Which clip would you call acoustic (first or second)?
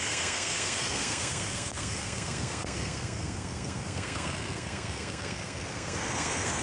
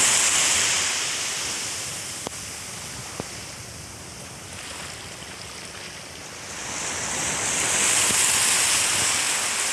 second